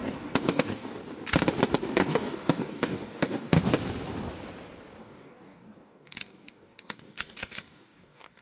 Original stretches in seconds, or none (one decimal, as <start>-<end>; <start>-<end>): 1.0-1.9; 3.6-5.0